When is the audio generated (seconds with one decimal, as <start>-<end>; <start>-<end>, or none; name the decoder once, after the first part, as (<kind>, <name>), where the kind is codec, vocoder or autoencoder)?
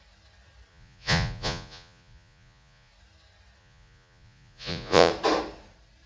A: 0.7-2.9 (vocoder, Vocos); 3.6-5.1